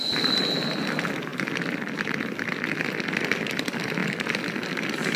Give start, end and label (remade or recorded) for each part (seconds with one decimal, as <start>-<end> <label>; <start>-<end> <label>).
0.0-5.2 recorded